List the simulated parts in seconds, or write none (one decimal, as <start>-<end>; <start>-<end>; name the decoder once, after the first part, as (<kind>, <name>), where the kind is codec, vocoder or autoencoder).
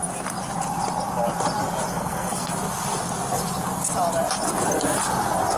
1.9-2.5 (codec, SNAC)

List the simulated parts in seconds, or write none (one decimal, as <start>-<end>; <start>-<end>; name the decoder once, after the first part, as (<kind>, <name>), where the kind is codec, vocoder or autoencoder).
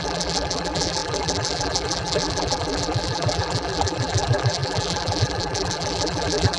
0.0-6.6 (vocoder, BigVGAN v2)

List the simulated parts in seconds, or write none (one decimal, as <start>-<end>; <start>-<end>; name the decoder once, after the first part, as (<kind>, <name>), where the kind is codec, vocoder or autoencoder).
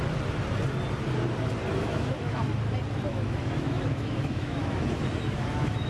1.8-2.4 (autoencoder, DAC-VAE); 3.1-5.9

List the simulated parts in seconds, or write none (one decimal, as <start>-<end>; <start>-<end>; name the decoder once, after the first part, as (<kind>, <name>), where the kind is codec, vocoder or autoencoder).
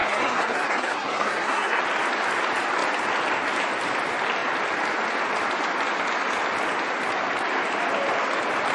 0.0-1.8 (codec, SNAC)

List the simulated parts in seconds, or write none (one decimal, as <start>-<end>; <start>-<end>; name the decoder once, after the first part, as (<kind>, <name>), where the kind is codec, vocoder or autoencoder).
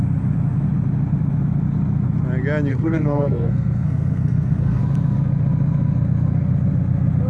2.7-4.8 (codec, SNAC)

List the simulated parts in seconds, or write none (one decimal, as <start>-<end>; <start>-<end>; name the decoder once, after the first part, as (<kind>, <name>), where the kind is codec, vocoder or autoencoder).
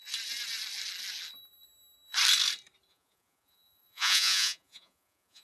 2.9-5.4 (vocoder, Vocos)